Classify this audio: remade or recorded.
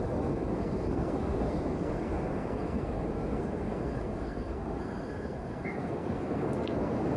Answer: remade